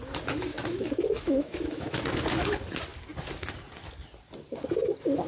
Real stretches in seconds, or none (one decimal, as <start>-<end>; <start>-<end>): 0.0-0.5; 2.0-5.3